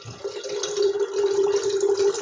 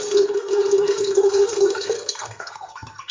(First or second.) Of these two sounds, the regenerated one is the second